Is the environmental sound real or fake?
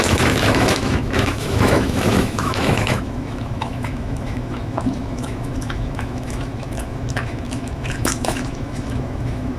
fake